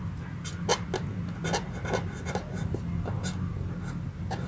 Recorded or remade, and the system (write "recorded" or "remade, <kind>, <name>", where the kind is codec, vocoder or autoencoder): recorded